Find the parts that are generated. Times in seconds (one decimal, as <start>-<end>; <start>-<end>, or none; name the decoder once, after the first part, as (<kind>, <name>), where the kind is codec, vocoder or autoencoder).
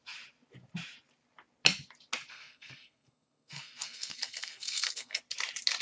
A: 2.3-5.2 (codec, SNAC)